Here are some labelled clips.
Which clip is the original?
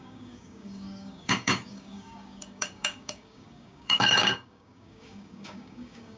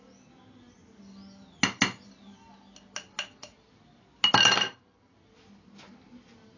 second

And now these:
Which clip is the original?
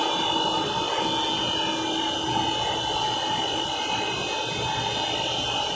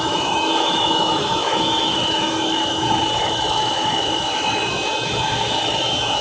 first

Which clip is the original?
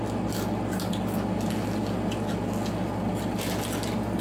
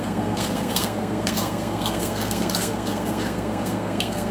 first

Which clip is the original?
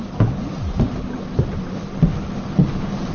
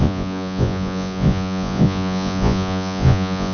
first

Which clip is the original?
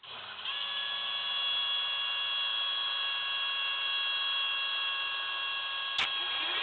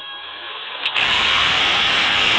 first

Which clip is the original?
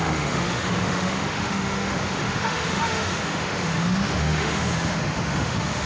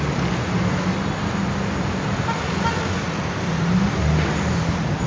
second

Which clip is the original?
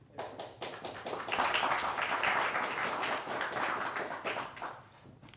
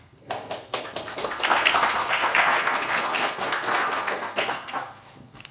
first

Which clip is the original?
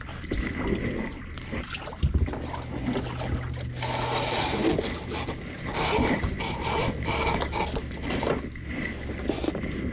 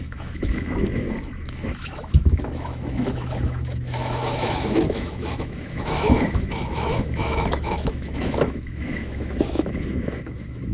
first